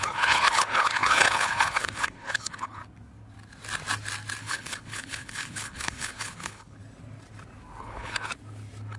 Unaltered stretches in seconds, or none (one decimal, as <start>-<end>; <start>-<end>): 2.8-4.4; 6.8-7.8; 8.3-9.0